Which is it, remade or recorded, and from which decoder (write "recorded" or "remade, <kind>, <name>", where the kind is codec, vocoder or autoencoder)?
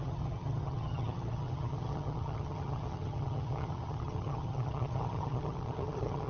remade, vocoder, HiFi-GAN